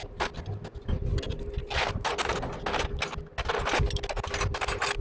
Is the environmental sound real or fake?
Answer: real